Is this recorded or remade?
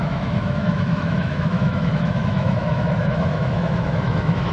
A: remade